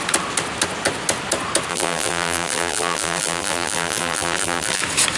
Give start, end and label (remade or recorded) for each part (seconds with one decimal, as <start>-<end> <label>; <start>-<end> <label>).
0.0-1.7 recorded; 1.7-4.8 remade; 4.8-5.2 recorded